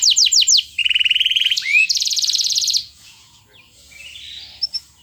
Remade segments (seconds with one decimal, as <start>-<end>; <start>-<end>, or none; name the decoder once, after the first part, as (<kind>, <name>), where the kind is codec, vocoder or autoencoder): 0.8-3.4 (vocoder, Vocos)